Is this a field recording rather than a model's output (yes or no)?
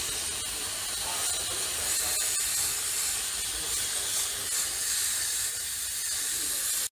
yes